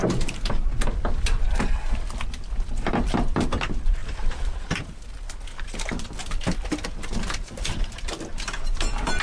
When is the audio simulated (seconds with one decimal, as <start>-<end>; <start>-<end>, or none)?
0.0-0.7